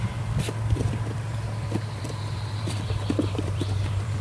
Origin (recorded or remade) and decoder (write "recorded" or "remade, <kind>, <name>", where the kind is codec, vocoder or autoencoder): remade, vocoder, BigVGAN v2